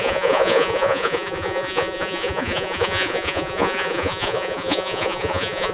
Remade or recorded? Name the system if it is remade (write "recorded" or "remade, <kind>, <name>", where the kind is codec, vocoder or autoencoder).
remade, vocoder, Vocos